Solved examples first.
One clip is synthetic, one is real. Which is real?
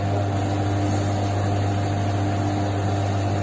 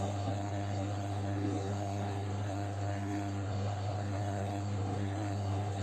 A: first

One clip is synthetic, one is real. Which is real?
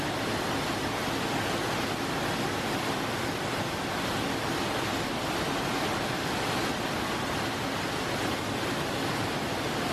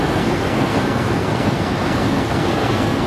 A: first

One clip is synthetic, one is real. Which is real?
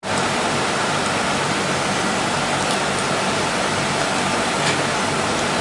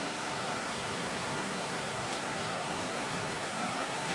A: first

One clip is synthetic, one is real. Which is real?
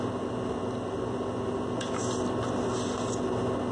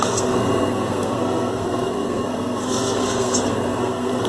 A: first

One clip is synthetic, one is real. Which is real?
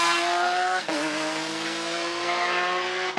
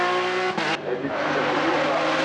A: second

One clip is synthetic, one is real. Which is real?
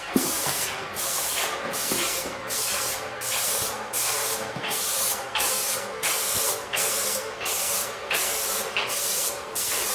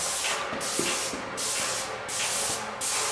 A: second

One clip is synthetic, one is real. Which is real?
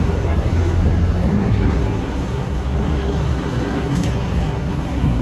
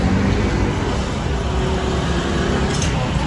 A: second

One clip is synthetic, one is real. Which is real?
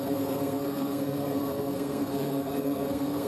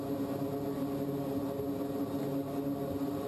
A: second